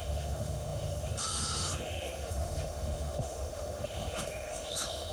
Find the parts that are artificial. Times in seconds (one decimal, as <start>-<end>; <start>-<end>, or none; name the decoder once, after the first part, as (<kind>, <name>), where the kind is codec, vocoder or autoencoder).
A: 0.0-5.1 (autoencoder, DAC-VAE)